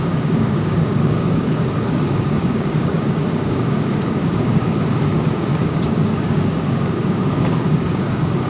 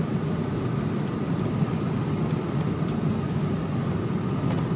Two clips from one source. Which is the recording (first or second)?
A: second